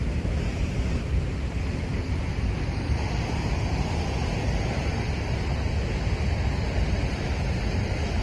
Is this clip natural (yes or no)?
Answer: yes